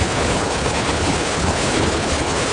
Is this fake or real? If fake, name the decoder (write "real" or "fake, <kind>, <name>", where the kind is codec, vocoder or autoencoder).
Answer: fake, codec, HILCodec